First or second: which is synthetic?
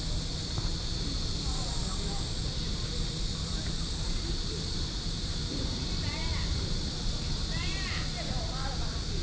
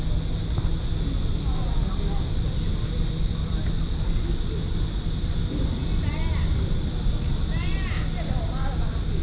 first